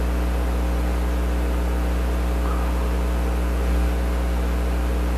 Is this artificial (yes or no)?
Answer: no